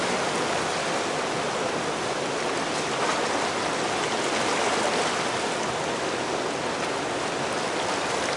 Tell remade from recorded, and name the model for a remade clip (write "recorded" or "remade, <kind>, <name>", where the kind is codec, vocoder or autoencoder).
recorded